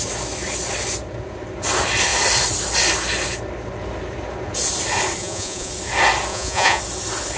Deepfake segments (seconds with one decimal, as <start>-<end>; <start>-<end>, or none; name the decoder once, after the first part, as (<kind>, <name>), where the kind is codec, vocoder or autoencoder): 5.2-5.7 (vocoder, Vocos); 6.3-6.8